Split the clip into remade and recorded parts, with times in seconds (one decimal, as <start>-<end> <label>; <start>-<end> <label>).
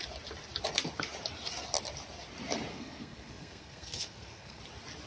0.0-2.7 recorded; 2.7-4.6 remade; 4.6-5.1 recorded